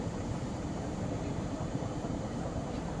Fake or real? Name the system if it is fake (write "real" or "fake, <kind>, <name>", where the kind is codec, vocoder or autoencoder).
fake, vocoder, BigVGAN v2